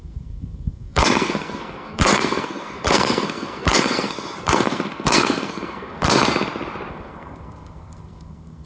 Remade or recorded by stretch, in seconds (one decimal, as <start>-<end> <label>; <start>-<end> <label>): 0.0-6.2 remade; 6.2-6.9 recorded; 6.9-8.7 remade